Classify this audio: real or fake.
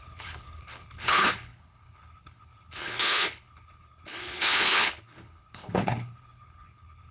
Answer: fake